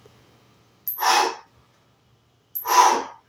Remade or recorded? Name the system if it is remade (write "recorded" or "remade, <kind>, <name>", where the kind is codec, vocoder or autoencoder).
recorded